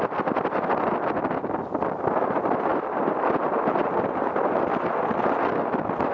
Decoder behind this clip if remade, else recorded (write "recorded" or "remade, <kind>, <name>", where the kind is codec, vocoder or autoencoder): recorded